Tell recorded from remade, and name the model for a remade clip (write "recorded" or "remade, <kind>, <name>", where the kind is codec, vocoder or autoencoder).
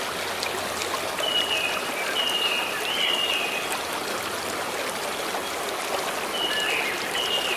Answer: recorded